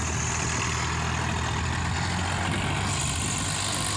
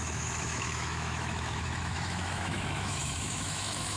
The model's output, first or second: second